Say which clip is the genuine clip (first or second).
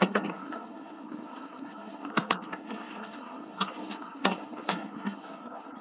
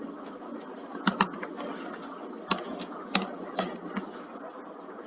second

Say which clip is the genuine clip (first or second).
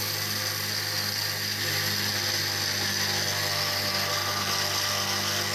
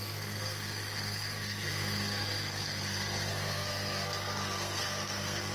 first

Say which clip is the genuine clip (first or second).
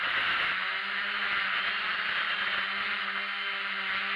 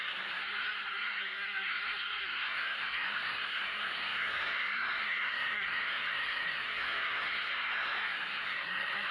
first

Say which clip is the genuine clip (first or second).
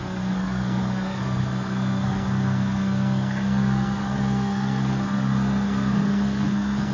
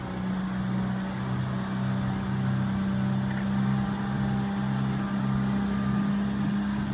second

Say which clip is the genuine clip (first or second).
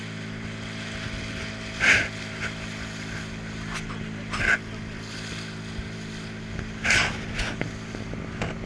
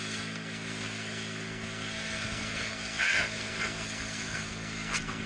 first